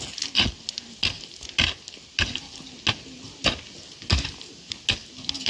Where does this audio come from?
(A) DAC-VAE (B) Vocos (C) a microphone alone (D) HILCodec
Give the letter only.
C